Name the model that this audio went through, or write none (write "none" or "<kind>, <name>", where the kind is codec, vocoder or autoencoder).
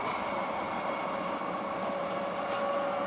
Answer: none